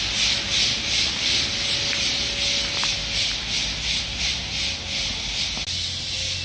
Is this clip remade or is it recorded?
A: recorded